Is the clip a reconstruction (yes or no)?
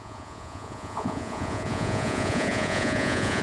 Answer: yes